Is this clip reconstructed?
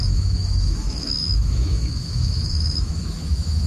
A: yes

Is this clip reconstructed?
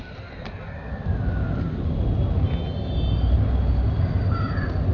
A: no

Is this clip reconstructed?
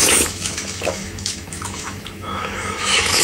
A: yes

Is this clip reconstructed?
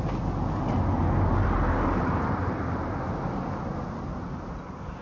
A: no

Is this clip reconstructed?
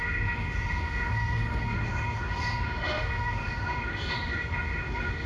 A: yes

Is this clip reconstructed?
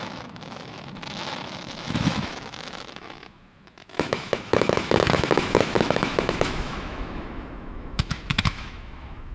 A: yes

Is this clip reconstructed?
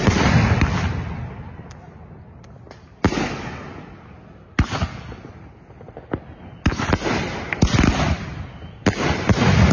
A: no